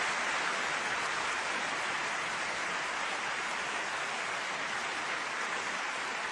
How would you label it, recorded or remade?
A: recorded